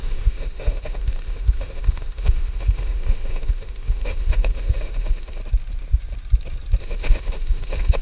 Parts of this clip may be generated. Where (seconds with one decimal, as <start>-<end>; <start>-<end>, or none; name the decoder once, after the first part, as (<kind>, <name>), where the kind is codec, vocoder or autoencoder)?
0.0-5.4 (autoencoder, DAC-VAE); 6.8-8.0